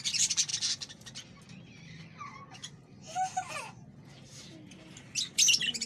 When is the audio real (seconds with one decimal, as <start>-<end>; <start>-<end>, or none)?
0.0-5.9